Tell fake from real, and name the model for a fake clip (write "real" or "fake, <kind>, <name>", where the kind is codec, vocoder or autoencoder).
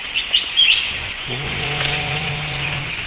fake, vocoder, Vocos